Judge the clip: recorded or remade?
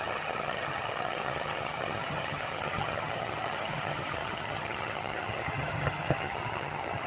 remade